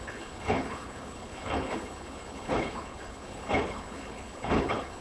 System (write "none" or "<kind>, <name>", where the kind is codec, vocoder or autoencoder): codec, HILCodec